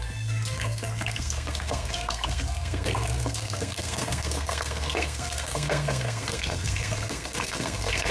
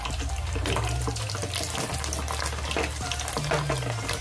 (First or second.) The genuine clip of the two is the second